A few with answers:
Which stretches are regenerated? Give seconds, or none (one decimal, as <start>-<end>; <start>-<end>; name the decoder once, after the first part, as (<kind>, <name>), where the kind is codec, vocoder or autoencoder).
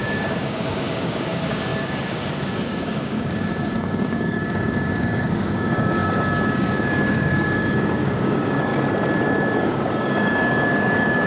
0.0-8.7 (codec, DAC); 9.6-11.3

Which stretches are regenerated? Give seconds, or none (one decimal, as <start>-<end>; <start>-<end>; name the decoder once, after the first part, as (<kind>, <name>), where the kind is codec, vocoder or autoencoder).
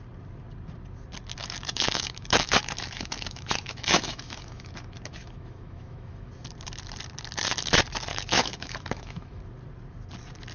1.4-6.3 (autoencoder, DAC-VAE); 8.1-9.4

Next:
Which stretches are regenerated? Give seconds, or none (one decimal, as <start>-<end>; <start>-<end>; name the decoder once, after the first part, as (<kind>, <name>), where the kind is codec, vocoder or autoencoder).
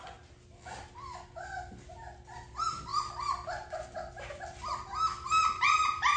none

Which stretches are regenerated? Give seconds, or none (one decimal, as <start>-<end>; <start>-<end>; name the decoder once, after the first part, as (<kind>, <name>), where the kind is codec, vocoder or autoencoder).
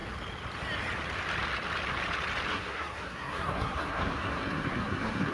2.5-5.3 (codec, SNAC)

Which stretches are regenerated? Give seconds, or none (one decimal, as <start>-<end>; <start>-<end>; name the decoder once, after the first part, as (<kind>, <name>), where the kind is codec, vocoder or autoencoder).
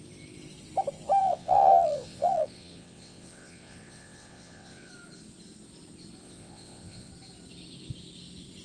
1.2-4.9 (vocoder, WaveNeXt); 6.2-7.1